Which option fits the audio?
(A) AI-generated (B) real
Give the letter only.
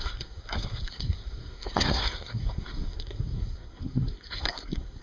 A